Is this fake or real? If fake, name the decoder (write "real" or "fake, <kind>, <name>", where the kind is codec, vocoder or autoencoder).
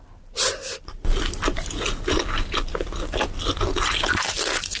real